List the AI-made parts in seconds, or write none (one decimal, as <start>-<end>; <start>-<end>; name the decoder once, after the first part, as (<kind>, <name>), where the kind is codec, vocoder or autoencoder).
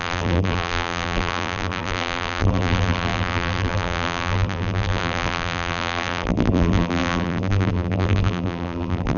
0.0-9.2 (vocoder, BigVGAN v2)